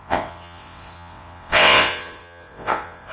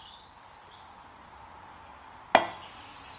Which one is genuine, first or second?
second